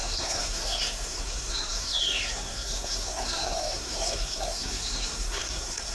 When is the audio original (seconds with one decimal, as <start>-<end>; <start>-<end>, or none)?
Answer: none